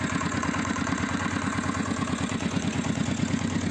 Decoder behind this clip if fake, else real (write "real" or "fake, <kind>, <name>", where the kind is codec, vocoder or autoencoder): fake, vocoder, Vocos